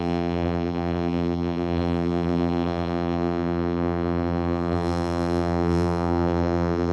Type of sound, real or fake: fake